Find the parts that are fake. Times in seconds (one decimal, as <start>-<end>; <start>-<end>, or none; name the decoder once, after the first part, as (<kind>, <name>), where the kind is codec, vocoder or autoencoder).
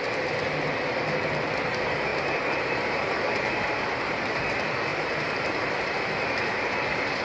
2.1-3.6 (vocoder, BigVGAN v2); 4.9-7.2